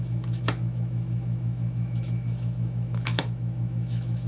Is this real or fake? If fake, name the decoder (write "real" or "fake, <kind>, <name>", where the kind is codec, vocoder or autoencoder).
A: fake, autoencoder, DAC-VAE